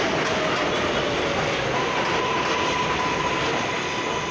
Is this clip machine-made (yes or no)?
no